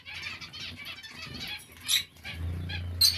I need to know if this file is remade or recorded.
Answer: recorded